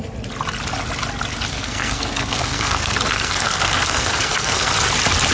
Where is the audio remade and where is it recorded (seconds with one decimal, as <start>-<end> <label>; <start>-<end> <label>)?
0.0-1.5 recorded; 1.5-4.7 remade; 4.7-5.3 recorded